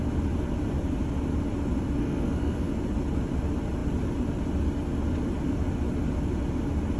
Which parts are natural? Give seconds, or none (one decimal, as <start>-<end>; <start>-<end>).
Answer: 0.0-2.0; 2.7-7.0